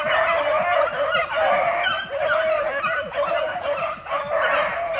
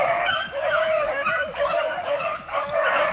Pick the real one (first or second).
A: first